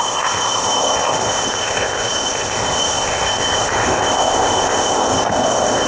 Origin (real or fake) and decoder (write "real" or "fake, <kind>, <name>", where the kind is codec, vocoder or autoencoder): fake, codec, ZipCodec